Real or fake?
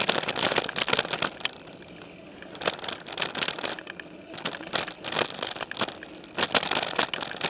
real